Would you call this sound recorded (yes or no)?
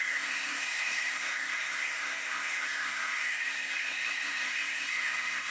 no